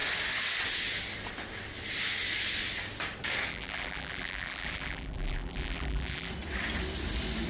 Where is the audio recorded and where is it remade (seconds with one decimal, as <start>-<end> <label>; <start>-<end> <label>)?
0.0-3.5 recorded; 3.5-6.3 remade; 6.3-7.5 recorded